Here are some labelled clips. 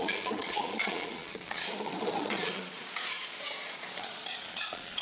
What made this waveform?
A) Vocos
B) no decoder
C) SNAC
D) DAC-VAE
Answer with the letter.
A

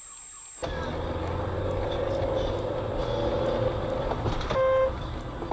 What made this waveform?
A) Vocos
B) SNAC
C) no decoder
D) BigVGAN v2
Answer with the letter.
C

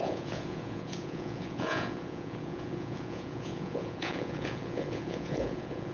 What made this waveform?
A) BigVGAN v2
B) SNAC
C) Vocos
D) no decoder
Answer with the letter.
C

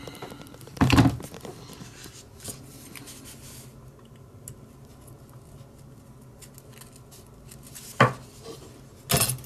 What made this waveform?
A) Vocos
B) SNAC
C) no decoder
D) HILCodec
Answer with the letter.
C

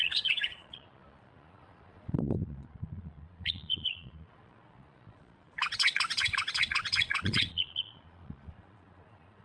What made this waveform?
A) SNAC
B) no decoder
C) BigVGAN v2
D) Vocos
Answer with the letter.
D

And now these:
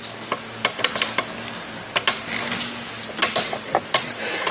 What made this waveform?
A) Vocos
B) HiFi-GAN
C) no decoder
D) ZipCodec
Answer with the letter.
C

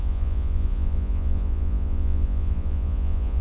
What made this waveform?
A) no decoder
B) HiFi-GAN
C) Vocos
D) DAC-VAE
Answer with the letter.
C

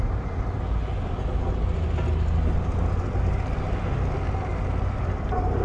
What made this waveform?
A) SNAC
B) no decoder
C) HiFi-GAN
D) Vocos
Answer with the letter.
B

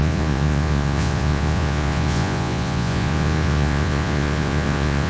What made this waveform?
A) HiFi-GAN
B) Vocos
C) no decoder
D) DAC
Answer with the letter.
B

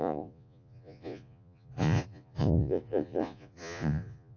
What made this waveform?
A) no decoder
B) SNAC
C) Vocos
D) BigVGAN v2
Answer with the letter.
C